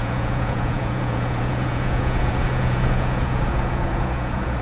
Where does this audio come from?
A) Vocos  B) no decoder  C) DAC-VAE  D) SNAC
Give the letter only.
A